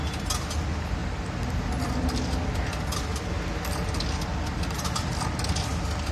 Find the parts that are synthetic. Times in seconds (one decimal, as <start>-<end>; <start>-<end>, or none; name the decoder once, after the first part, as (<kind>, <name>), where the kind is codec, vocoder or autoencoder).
none